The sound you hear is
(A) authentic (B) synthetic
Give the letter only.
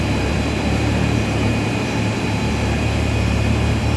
B